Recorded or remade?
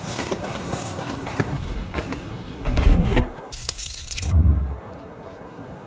remade